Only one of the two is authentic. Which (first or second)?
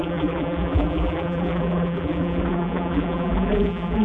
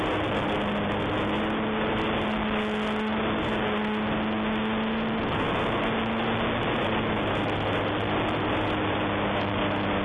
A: second